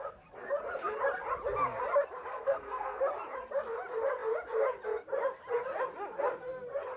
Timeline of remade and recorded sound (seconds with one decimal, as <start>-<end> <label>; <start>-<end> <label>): 0.0-2.3 recorded; 2.3-3.0 remade; 3.0-7.0 recorded